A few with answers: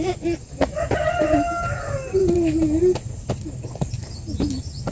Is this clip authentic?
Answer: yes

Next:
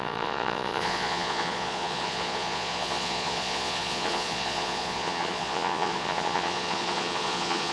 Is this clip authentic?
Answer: no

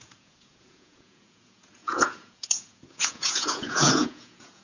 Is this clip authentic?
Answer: no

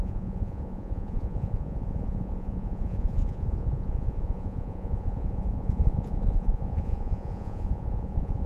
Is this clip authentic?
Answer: no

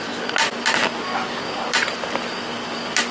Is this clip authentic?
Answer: yes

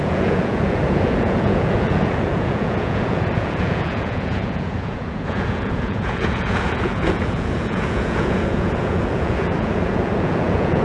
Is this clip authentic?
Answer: no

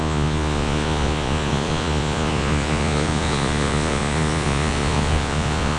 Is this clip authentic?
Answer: no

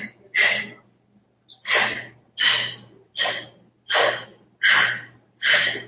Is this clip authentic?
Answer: yes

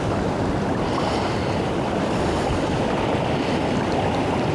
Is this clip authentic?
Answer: yes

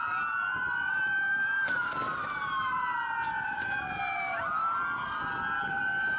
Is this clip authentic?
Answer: yes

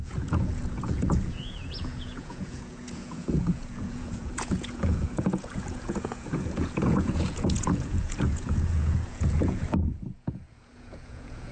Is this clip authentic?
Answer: no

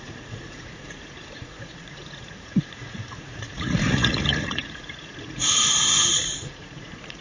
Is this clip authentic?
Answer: no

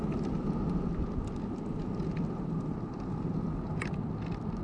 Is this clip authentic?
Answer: yes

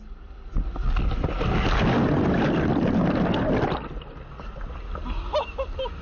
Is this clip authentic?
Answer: yes